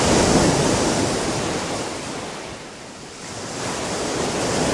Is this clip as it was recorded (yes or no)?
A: yes